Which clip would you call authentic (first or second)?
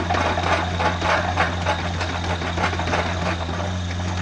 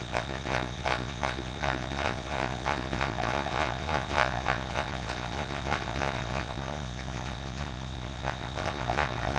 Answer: first